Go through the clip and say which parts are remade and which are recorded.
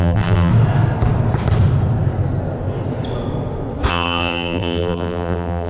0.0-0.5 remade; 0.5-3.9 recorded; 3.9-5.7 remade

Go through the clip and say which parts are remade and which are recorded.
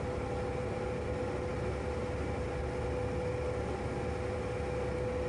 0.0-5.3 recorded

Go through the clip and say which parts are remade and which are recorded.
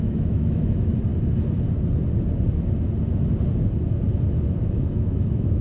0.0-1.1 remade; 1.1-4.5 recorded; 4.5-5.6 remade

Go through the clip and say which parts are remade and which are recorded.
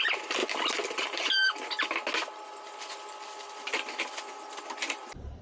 0.0-5.4 recorded